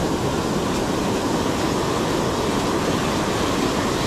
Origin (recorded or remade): recorded